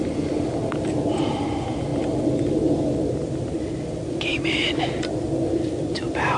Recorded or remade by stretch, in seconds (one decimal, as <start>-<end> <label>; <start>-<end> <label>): 0.0-6.4 recorded